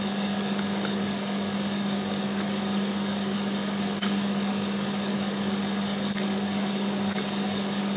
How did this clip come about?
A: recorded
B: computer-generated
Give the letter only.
B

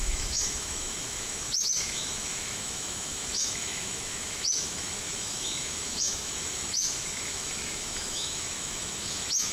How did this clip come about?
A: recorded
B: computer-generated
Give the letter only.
B